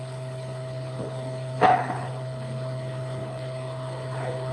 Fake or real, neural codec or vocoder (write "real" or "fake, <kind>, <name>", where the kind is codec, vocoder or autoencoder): fake, codec, HILCodec